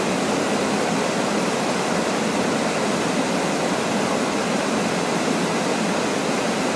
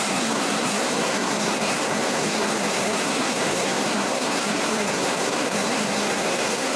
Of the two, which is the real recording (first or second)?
first